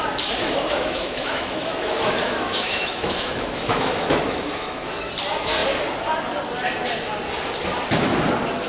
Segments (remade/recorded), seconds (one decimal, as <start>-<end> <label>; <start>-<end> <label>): 0.0-0.4 recorded; 0.4-5.1 remade; 5.1-8.7 recorded